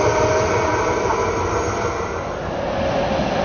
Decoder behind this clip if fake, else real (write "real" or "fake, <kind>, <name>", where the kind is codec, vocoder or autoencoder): real